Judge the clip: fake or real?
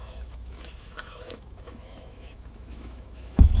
fake